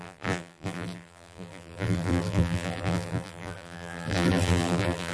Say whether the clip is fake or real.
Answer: fake